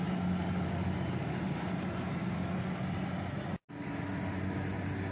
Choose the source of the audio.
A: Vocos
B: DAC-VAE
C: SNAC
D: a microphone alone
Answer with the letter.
D